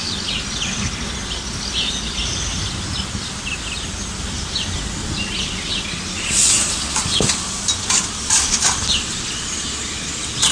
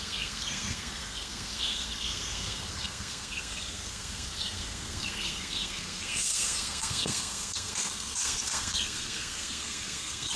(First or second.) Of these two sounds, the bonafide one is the first